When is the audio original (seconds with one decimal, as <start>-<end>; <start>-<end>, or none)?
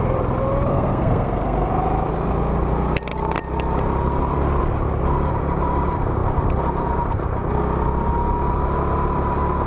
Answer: 0.0-0.7; 1.7-9.7